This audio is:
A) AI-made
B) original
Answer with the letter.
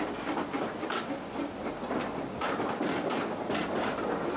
B